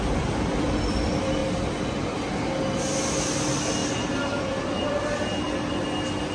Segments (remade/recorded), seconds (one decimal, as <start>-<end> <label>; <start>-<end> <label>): 0.0-6.3 recorded